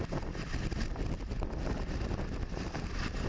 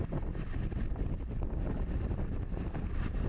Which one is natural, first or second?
first